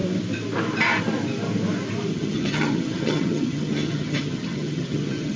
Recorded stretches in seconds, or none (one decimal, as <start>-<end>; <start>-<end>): 0.0-2.1

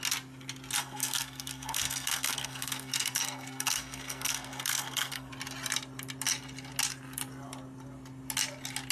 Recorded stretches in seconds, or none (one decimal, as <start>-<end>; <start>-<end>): 0.0-0.8; 5.3-8.9

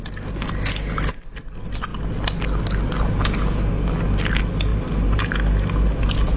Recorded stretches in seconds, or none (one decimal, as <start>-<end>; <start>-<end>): 0.0-4.7; 5.3-6.4

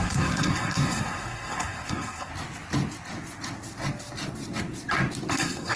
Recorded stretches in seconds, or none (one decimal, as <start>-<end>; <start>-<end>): 2.3-5.3

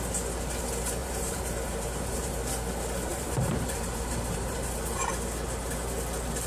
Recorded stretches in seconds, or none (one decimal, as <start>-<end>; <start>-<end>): 0.0-1.0; 2.4-3.1; 5.1-6.5

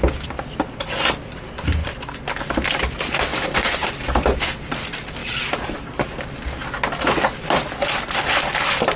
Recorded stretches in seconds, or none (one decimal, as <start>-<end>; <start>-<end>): 0.0-3.3; 3.9-9.0

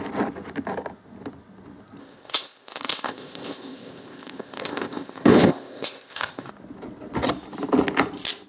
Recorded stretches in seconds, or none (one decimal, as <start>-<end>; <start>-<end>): 0.0-2.0; 6.5-8.5